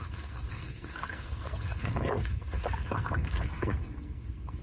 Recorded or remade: remade